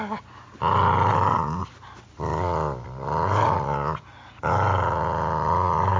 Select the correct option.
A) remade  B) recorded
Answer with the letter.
B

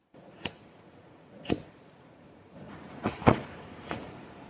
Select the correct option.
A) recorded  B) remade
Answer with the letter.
B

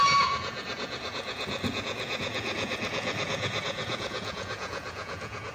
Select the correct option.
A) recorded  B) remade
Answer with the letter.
B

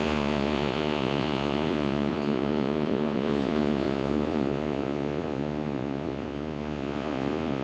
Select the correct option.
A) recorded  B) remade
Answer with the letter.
B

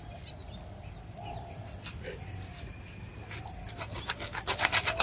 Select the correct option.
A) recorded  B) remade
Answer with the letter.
A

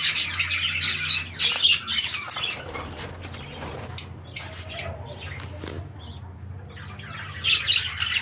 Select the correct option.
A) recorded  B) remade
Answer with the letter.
A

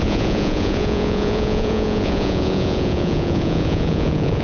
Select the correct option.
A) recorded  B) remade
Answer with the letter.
B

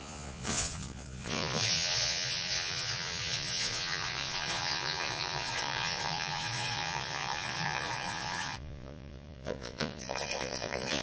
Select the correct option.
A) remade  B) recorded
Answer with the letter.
A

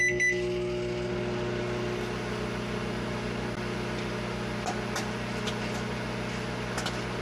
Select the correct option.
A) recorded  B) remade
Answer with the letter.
A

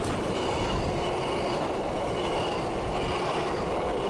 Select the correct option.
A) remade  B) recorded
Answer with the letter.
B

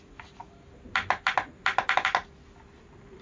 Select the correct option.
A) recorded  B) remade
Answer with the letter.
A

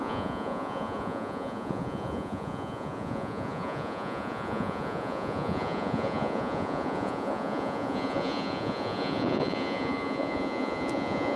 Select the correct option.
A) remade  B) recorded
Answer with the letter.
A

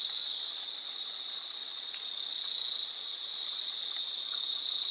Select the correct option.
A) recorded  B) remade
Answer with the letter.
A